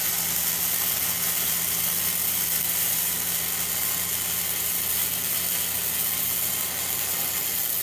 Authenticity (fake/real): real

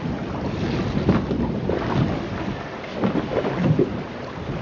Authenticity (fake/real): real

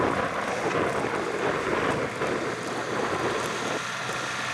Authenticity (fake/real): real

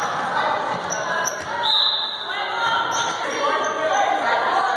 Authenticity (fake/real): real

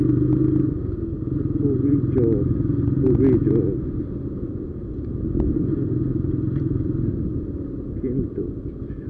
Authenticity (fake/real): real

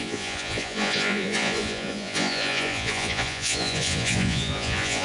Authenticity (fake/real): fake